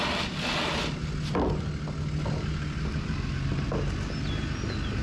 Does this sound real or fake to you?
real